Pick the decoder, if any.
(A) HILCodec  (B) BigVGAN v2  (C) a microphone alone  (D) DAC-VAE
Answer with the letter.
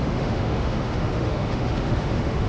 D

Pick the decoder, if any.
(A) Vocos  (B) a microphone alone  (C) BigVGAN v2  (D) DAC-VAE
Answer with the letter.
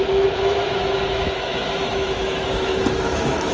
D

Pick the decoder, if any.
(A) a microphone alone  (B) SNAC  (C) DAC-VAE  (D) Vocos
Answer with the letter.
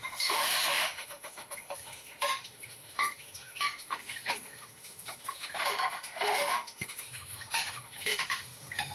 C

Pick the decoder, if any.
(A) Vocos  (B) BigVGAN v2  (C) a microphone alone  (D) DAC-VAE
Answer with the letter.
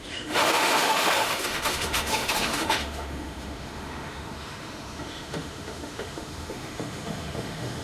D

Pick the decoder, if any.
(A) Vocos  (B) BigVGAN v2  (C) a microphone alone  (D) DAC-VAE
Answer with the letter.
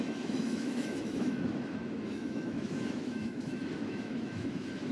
D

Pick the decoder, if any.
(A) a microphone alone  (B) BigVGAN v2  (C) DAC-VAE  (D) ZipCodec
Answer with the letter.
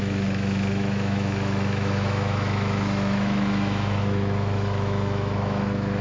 C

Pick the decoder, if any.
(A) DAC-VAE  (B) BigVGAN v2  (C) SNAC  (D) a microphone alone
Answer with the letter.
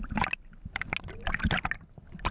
D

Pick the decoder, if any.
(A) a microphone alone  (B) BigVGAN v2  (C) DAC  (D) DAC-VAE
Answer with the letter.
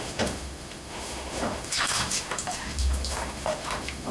D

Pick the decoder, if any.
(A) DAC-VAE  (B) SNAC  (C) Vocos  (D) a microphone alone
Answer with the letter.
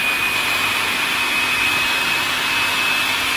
D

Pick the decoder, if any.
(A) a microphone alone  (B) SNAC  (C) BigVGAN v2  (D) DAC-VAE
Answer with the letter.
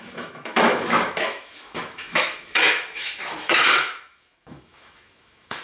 D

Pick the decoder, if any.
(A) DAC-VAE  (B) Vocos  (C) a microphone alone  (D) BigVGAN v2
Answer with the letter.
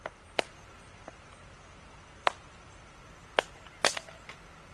C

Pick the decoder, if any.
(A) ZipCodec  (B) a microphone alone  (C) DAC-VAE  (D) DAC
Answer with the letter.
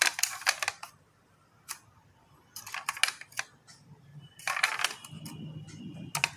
B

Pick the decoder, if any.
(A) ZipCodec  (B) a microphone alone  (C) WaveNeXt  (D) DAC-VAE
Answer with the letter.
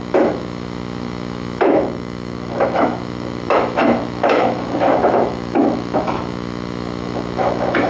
D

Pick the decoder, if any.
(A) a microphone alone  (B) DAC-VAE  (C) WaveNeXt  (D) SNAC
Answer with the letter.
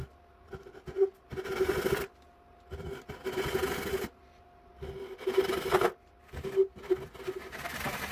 A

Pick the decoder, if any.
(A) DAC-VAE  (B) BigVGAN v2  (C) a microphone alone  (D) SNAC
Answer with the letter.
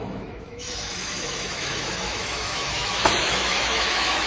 A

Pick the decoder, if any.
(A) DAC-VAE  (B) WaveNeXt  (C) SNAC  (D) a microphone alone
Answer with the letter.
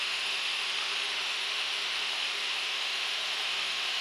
A